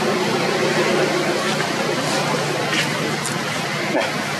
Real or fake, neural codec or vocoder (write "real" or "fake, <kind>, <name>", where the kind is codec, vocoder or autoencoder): real